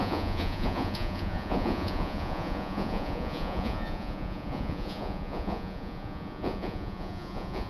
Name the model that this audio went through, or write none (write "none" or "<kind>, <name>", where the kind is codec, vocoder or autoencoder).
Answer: vocoder, Vocos